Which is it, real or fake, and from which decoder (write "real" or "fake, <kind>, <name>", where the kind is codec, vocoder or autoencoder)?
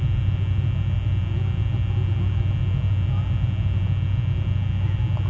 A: real